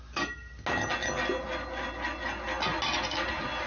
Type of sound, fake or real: real